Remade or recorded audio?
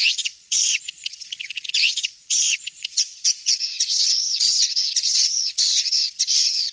remade